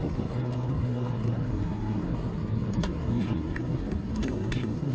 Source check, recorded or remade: remade